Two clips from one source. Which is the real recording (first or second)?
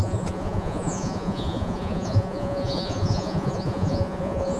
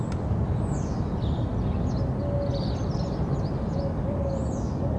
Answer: second